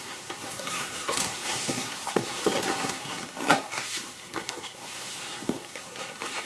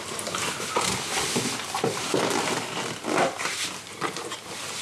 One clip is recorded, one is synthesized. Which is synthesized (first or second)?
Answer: first